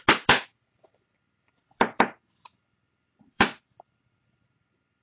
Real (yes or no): no